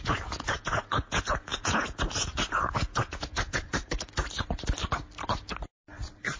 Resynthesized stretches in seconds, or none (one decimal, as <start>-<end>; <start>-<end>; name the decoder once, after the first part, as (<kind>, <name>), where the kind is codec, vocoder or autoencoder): 0.0-3.8 (vocoder, Vocos)